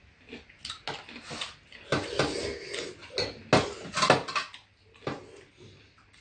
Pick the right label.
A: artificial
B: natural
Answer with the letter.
B